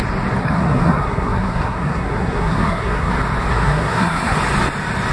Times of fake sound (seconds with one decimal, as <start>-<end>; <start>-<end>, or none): 0.4-3.1; 3.5-4.4